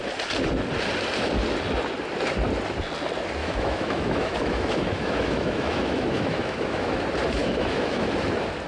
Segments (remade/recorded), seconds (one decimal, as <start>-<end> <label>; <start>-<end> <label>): 0.0-3.4 recorded; 3.4-7.0 remade; 7.0-7.4 recorded; 7.4-8.1 remade; 8.1-8.7 recorded